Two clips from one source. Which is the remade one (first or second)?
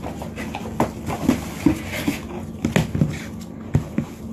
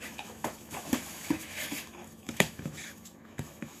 second